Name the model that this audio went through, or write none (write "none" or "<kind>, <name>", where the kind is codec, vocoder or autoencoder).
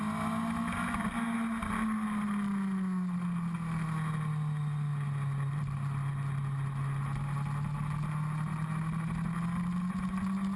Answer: none